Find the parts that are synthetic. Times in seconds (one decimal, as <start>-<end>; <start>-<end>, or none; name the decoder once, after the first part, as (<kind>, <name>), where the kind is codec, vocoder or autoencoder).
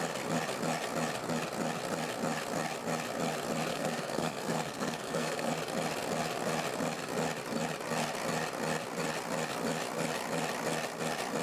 3.7-5.5 (codec, SNAC)